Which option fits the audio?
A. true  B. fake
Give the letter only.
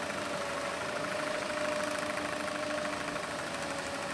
A